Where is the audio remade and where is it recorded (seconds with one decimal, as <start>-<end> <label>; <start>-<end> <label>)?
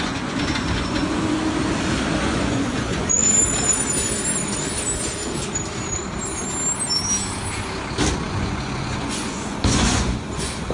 0.0-1.4 remade; 1.4-2.2 recorded; 2.2-3.2 remade; 3.2-8.3 recorded; 8.3-10.7 remade